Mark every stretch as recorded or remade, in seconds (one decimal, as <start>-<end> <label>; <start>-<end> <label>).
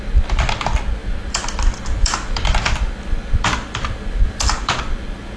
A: 0.0-5.4 recorded